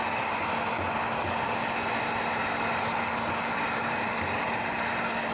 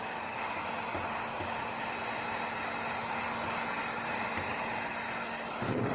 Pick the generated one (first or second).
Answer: first